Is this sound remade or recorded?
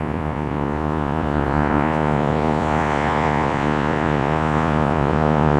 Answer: remade